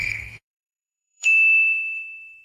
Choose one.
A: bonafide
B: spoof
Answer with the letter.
B